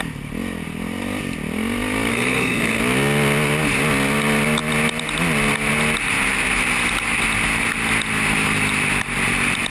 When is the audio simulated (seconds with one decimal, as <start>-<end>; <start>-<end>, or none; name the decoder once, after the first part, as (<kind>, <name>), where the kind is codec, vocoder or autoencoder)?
2.1-2.8 (codec, SNAC)